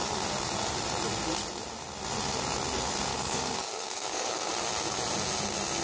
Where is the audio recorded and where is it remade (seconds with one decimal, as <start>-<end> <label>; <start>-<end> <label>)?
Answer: 0.0-3.1 recorded; 3.1-4.5 remade; 4.5-5.8 recorded